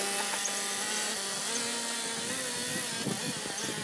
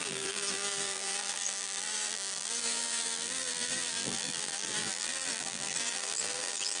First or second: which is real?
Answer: first